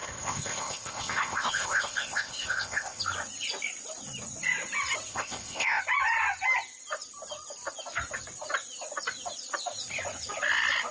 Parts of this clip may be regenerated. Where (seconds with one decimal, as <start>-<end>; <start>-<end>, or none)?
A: 0.0-3.0; 5.1-5.8